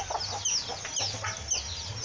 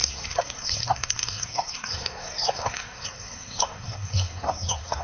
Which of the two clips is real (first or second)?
first